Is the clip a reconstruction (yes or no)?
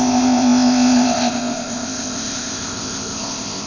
yes